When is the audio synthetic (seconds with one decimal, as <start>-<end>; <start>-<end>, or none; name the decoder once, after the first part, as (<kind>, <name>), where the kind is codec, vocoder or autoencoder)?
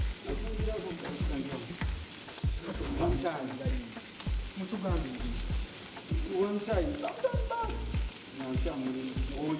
2.3-3.2 (codec, HILCodec)